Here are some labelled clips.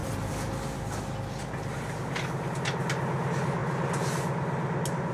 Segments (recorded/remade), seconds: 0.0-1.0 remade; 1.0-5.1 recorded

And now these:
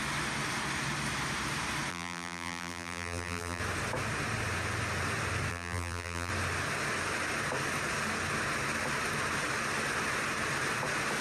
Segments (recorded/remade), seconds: 0.0-1.9 recorded; 1.9-3.6 remade; 3.6-5.5 recorded; 5.5-6.3 remade; 6.3-11.2 recorded

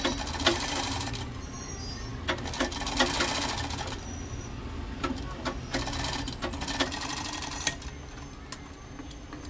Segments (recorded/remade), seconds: 0.0-0.5 recorded; 0.5-1.6 remade; 1.6-9.5 recorded